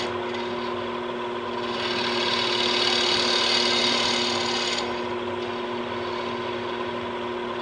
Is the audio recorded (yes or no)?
yes